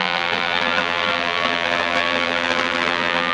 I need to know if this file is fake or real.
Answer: fake